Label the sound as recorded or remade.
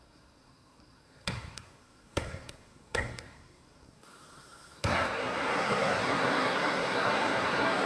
remade